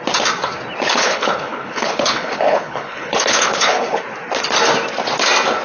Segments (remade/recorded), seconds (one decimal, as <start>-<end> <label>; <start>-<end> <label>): 0.0-0.9 recorded; 0.9-4.0 remade; 4.0-5.6 recorded